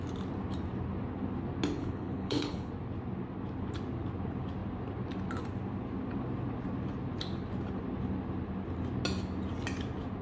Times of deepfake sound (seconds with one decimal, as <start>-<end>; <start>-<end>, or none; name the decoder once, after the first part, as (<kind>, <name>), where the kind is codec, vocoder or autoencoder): 1.8-2.7 (codec, HILCodec)